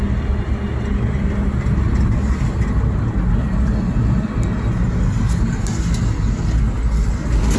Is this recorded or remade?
recorded